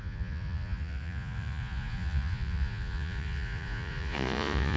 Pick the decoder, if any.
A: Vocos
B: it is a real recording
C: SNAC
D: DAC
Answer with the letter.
A